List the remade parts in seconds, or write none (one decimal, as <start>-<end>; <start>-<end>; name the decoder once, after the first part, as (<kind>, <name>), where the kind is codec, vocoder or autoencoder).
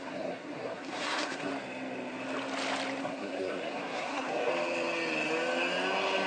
0.0-1.5 (codec, SNAC); 3.0-4.5